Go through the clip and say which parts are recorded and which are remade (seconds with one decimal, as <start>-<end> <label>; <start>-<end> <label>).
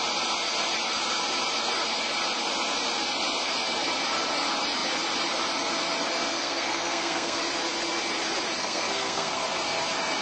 0.0-6.3 recorded; 6.3-7.4 remade; 7.4-8.6 recorded; 8.6-9.4 remade; 9.4-10.2 recorded